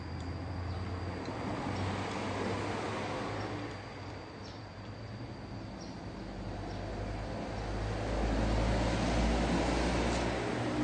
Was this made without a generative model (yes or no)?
yes